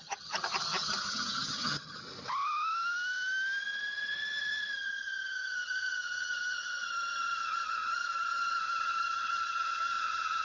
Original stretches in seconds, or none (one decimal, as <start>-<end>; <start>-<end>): 2.0-3.6